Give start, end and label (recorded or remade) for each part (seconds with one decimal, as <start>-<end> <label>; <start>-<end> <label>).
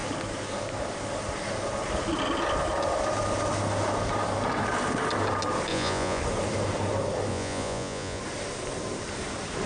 0.0-5.7 recorded; 5.7-6.2 remade; 6.2-7.3 recorded; 7.3-8.2 remade; 8.2-9.7 recorded